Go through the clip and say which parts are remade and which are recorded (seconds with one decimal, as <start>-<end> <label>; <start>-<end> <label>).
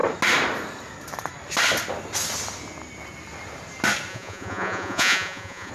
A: 0.0-4.1 recorded; 4.1-5.7 remade